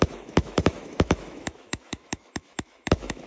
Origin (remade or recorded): remade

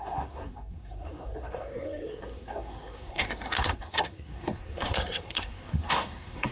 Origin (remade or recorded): remade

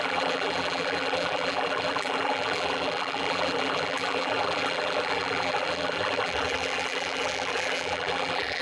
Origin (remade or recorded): remade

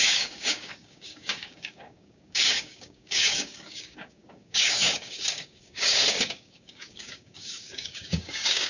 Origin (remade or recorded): remade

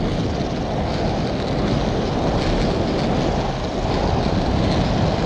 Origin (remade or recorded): recorded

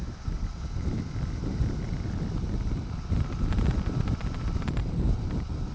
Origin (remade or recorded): recorded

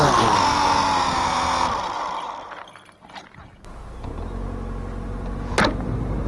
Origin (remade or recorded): recorded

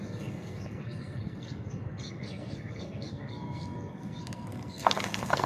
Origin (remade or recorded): remade